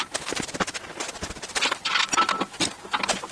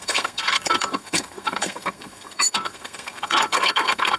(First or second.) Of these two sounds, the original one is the first